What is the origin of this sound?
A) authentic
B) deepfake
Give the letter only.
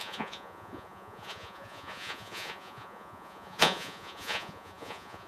B